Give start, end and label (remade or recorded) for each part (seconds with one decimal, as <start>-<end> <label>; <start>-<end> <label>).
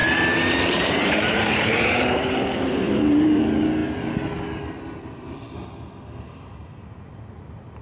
0.0-3.4 remade; 3.4-7.8 recorded